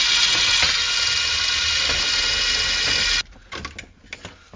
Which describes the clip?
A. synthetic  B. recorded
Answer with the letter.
B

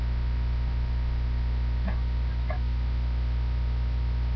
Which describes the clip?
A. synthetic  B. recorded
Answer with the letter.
B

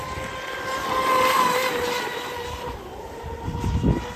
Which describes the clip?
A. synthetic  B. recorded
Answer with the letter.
B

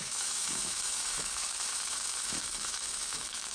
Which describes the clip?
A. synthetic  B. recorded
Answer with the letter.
A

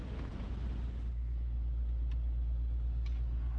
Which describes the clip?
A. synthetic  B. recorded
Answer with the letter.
B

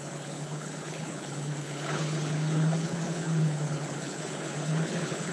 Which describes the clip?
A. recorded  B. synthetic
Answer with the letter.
B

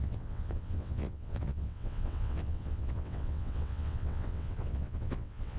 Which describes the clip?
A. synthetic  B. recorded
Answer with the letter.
A